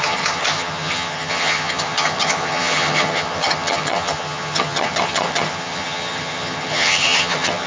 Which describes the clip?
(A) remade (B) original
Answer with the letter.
A